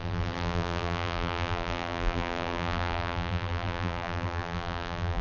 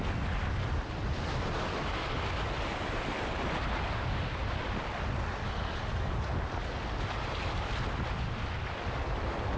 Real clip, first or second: second